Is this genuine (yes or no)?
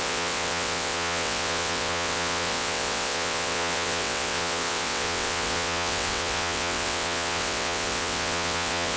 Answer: no